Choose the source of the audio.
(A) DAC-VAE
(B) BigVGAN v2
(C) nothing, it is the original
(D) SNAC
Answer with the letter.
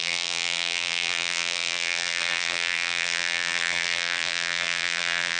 B